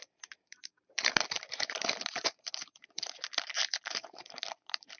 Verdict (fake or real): fake